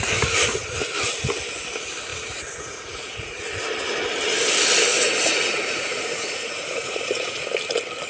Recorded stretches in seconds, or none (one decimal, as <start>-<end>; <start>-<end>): 0.0-2.1; 3.4-4.9; 7.4-8.1